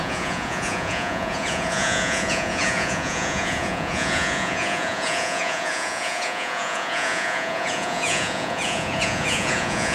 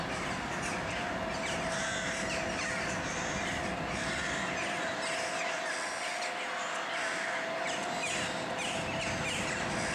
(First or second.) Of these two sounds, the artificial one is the first